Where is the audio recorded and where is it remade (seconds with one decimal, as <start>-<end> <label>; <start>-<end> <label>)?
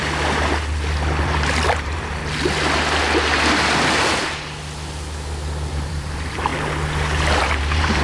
0.0-1.2 recorded; 1.2-2.2 remade; 2.2-5.7 recorded; 5.7-6.5 remade; 6.5-7.4 recorded; 7.4-8.0 remade